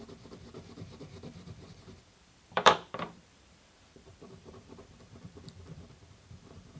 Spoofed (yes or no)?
yes